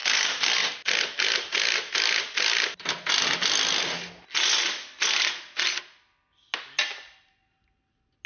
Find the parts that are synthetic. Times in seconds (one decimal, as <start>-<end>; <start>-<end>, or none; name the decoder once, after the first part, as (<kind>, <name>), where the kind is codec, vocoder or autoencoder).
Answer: none